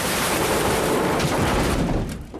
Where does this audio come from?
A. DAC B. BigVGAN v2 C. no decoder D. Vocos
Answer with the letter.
B